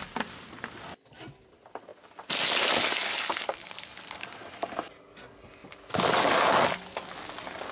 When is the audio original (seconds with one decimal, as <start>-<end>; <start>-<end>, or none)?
0.0-7.7